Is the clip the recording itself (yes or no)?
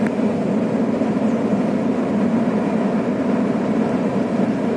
yes